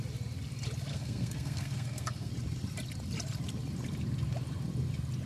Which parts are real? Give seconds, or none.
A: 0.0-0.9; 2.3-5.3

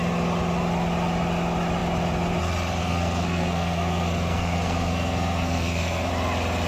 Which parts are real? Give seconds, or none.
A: 0.0-2.8; 6.1-6.7

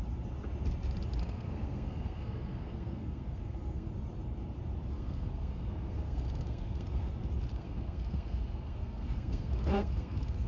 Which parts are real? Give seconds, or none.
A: 0.0-1.2; 3.9-4.9; 7.1-7.5

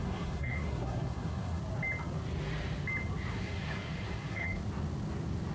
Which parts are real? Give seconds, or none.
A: 1.6-3.3; 4.6-5.5